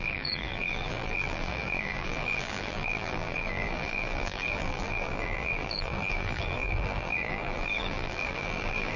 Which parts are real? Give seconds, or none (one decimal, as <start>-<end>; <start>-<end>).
none